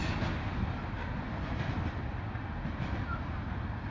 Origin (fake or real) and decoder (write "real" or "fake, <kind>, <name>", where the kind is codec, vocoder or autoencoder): real